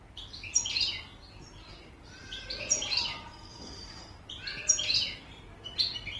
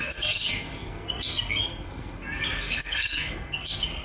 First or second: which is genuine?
first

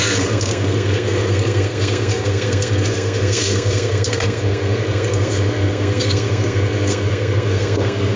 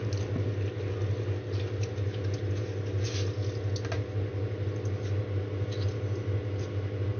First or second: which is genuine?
second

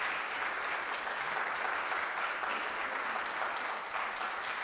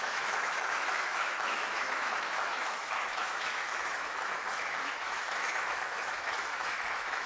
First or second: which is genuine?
first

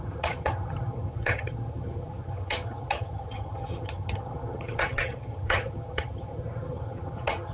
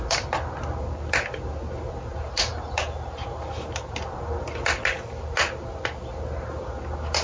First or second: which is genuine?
second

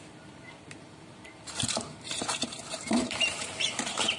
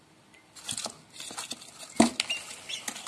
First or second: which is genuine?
second